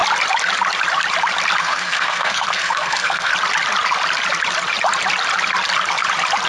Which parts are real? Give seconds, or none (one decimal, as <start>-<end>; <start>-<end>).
0.0-1.6; 3.3-6.5